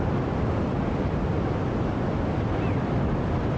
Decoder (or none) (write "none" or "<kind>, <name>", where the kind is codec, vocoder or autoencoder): none